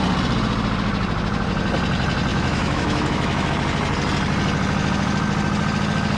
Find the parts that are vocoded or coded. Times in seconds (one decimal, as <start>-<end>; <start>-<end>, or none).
2.3-3.5